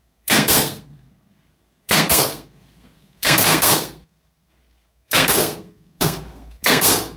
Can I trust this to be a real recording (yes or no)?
no